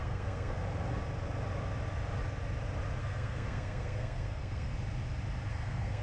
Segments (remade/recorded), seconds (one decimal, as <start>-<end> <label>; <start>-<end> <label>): 0.0-0.6 remade; 0.6-3.0 recorded; 3.0-4.7 remade; 4.7-5.5 recorded; 5.5-6.0 remade